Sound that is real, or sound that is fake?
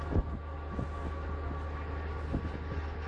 real